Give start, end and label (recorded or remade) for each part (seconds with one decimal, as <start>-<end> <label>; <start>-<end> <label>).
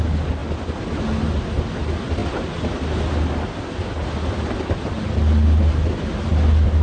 0.0-6.8 recorded